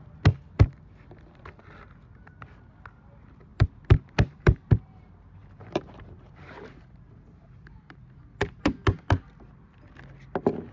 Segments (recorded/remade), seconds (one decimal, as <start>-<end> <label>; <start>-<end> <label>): 0.0-3.5 recorded; 3.5-5.0 remade; 5.0-5.4 recorded; 5.4-8.8 remade; 8.8-10.7 recorded